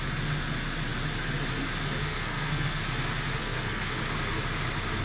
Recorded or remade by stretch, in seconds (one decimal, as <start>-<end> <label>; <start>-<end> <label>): 0.0-2.0 recorded; 2.0-2.8 remade; 2.8-3.4 recorded; 3.4-4.0 remade; 4.0-5.0 recorded